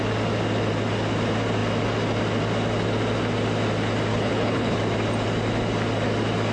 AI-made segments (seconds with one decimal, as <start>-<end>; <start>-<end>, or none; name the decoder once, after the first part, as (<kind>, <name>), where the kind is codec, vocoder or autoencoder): 4.1-4.8 (codec, HILCodec)